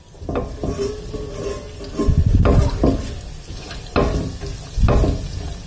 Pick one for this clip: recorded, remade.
recorded